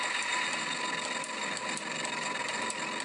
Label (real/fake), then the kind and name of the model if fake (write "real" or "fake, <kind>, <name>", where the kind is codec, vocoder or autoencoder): real